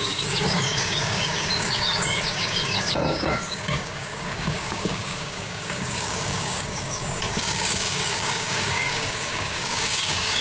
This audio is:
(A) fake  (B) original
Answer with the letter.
A